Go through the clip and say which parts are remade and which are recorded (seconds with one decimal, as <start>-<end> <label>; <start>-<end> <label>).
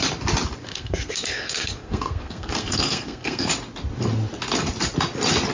0.0-0.7 recorded; 0.7-3.5 remade; 3.5-5.5 recorded